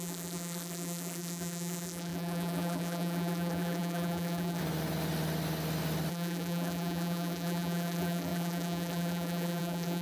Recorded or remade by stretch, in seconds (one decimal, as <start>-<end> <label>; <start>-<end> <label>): 0.0-4.6 remade; 4.6-6.1 recorded; 6.1-10.0 remade